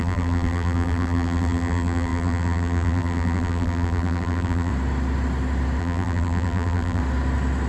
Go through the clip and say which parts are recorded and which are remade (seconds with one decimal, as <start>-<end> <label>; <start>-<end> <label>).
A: 0.0-4.7 remade; 4.7-5.8 recorded; 5.8-7.0 remade; 7.0-7.7 recorded